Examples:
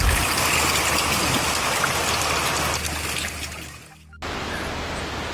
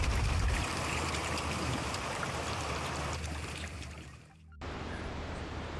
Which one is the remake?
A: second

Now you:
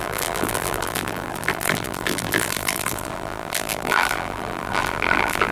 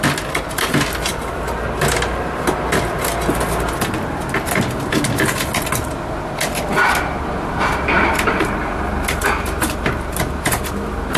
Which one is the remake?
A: first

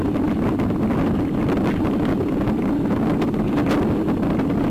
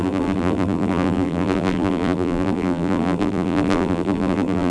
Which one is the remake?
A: second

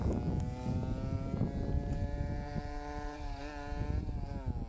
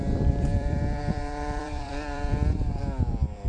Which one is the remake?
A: second